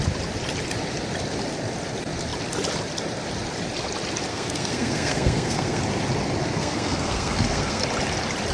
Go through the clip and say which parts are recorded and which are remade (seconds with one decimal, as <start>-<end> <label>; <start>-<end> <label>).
0.0-4.3 recorded; 4.3-5.8 remade; 5.8-6.4 recorded; 6.4-7.8 remade; 7.8-8.5 recorded